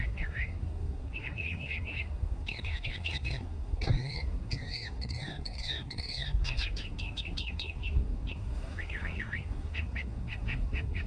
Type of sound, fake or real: fake